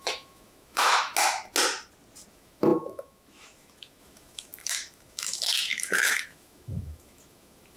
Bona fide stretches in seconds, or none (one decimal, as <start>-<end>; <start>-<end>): 1.1-2.3